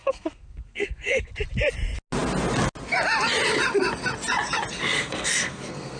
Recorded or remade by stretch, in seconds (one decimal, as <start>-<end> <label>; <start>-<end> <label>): 0.0-1.3 remade; 1.3-4.8 recorded; 4.8-6.0 remade